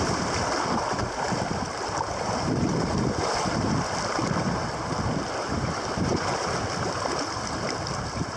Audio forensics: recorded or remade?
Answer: remade